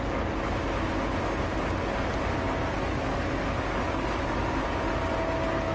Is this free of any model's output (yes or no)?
yes